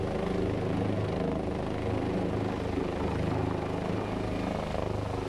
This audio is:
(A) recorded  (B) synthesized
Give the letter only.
A